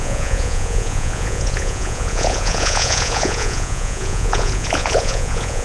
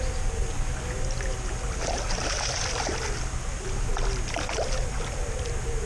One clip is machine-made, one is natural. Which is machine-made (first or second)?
first